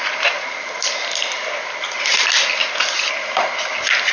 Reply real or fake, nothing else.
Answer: real